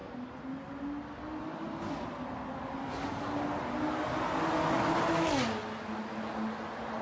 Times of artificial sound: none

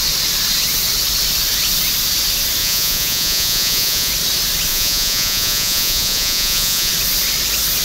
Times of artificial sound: 2.6-4.1 (vocoder, Vocos); 4.7-6.9

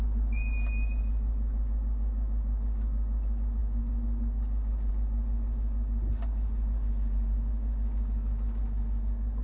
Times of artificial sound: none

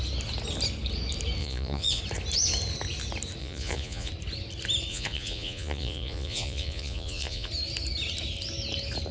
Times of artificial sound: 1.4-2.0 (vocoder, Vocos); 3.4-4.1; 4.9-7.5

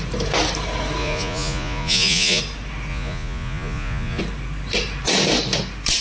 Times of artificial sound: 1.0-2.4 (vocoder, Vocos); 2.9-4.2